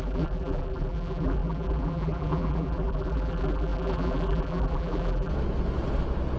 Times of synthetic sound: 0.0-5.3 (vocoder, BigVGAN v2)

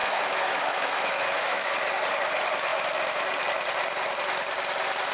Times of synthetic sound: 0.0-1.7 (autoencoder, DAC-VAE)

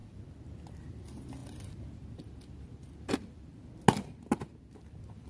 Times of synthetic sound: none

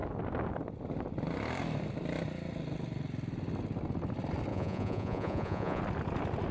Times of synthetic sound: 4.5-5.8 (vocoder, Vocos)

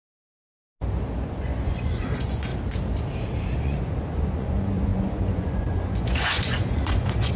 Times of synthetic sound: 1.2-2.5 (vocoder, Vocos); 3.6-7.4

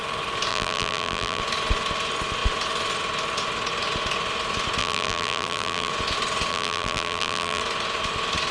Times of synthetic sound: 0.5-1.4 (vocoder, BigVGAN v2); 4.8-5.9; 6.5-7.6

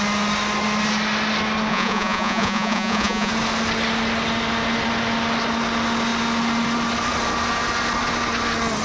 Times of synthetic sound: 1.7-3.3 (vocoder, Vocos)

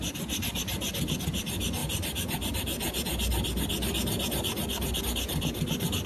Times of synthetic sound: none